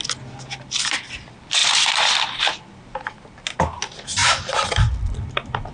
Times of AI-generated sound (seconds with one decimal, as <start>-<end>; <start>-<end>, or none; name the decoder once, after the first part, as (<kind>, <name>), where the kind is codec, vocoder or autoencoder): none